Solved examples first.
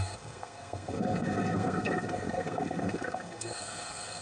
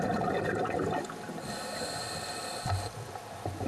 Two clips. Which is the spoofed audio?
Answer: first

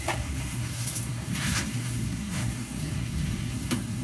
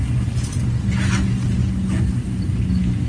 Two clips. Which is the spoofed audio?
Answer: first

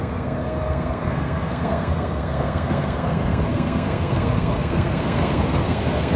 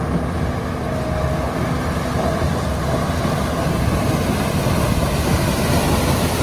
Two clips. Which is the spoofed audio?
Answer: first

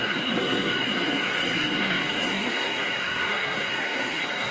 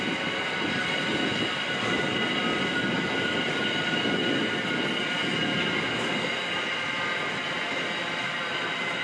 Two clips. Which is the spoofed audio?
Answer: first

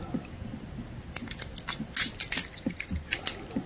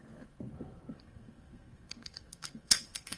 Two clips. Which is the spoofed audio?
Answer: second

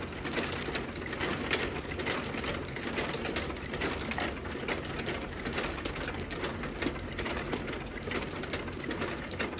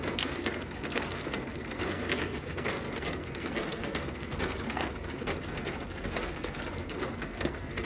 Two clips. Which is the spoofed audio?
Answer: second